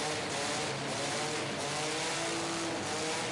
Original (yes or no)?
yes